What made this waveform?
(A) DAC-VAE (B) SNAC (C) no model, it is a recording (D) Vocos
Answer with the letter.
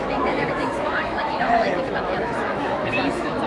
A